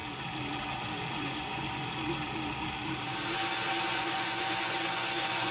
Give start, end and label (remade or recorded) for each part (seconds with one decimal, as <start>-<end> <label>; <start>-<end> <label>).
0.0-1.2 recorded; 1.2-1.8 remade; 1.8-3.8 recorded; 3.8-5.5 remade